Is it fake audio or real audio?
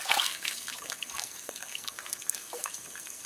fake